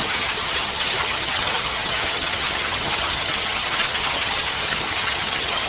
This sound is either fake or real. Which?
fake